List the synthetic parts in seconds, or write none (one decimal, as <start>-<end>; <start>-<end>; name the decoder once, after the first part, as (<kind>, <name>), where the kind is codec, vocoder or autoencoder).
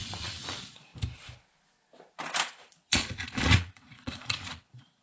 0.0-0.9 (vocoder, Vocos); 2.4-5.0